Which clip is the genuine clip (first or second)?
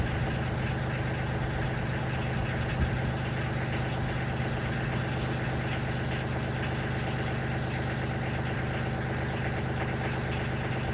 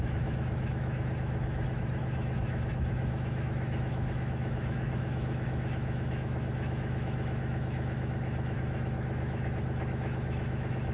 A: first